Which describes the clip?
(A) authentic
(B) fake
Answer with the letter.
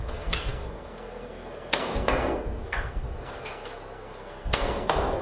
B